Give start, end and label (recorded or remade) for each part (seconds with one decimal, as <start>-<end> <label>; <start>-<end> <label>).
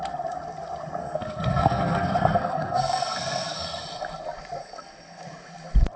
0.0-1.0 recorded; 1.0-3.8 remade; 3.8-4.6 recorded; 4.6-5.2 remade; 5.2-6.0 recorded